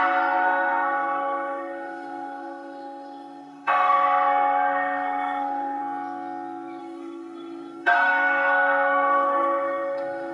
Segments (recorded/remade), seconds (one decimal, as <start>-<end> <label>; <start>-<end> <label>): 0.0-5.8 remade; 5.8-6.8 recorded; 6.8-10.3 remade

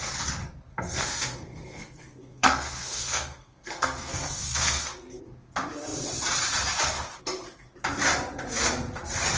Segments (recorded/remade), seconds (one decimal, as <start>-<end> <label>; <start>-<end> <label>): 0.0-0.7 recorded; 0.7-5.2 remade; 5.2-9.4 recorded